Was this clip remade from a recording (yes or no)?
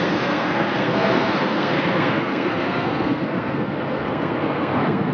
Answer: yes